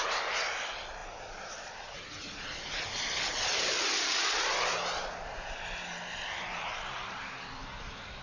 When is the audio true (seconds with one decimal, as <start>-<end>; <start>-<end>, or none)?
0.0-1.0; 5.0-8.2